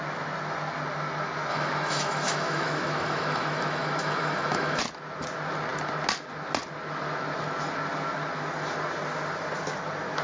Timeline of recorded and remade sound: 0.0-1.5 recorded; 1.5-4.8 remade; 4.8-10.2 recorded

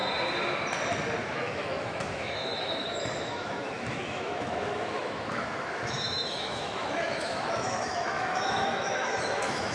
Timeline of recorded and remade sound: 0.0-1.2 recorded; 1.2-9.7 remade

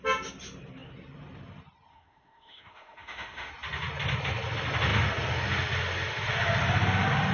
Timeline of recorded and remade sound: 0.0-1.9 recorded; 1.9-3.5 remade; 3.5-7.3 recorded

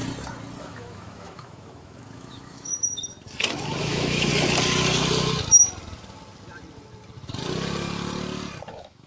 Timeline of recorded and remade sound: 0.0-0.6 recorded; 0.6-2.7 remade; 2.7-3.8 recorded; 3.8-4.3 remade; 4.3-8.7 recorded; 8.7-9.1 remade